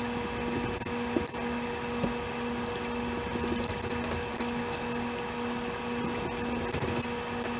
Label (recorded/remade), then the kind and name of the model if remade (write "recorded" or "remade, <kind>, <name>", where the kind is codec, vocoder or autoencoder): recorded